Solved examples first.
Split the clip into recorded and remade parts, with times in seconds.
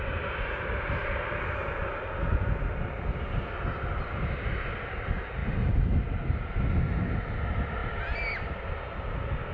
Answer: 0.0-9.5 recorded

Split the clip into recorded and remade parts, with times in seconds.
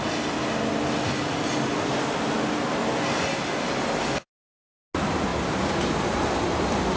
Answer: 0.0-7.0 recorded